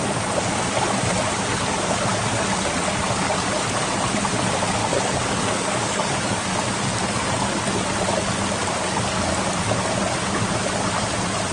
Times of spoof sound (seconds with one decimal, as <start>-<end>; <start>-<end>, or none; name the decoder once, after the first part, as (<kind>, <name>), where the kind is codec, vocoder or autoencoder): 4.8-6.5 (codec, DAC)